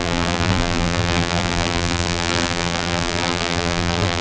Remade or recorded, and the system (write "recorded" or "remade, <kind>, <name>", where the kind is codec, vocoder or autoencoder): remade, vocoder, BigVGAN v2